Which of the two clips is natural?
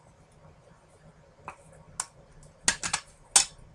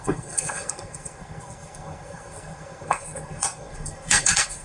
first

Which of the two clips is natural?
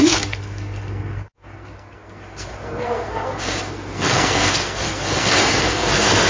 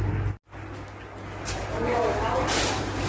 second